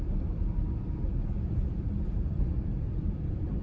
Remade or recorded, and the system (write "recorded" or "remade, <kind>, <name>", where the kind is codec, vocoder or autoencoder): remade, vocoder, BigVGAN v2